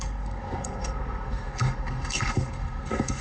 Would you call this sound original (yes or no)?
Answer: no